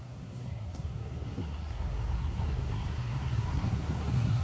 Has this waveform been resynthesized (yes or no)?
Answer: yes